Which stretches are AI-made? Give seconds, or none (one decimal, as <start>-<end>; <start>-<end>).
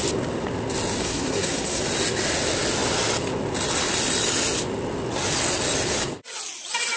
1.0-1.8